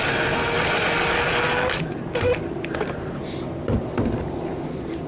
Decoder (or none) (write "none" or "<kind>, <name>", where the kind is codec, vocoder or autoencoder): none